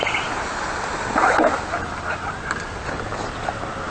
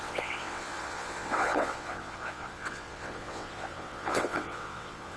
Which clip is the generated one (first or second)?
second